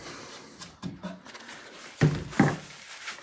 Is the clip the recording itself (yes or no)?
yes